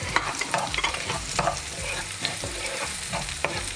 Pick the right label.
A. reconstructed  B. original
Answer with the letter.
A